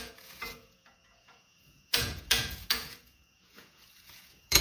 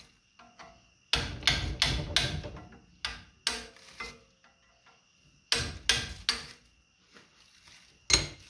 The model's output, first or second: first